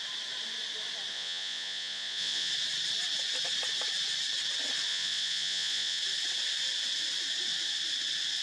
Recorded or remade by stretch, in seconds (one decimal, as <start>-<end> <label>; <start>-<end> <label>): 0.0-1.1 recorded; 1.1-2.5 remade; 2.5-4.9 recorded; 4.9-6.0 remade; 6.0-8.4 recorded